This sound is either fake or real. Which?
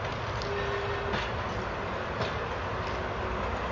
real